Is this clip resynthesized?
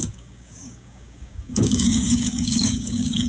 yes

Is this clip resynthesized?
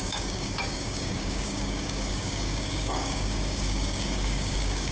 yes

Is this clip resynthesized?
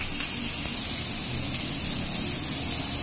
no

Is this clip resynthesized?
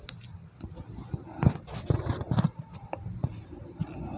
no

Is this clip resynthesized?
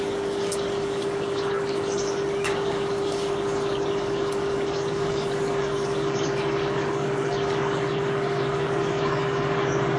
yes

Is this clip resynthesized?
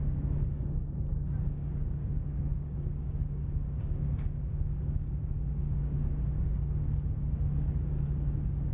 yes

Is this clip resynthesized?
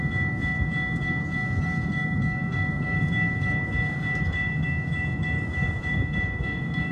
yes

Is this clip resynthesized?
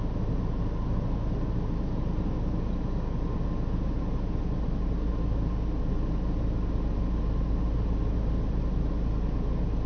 no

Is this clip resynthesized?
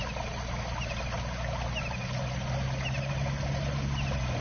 no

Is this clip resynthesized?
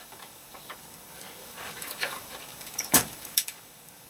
yes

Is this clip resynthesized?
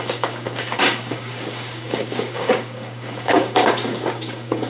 yes